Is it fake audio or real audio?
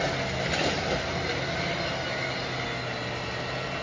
real